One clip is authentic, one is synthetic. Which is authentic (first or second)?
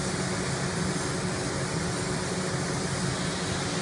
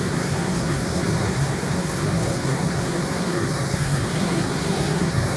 first